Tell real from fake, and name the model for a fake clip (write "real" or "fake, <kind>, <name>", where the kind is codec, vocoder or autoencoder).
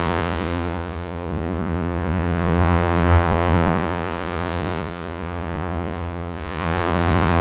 fake, vocoder, Vocos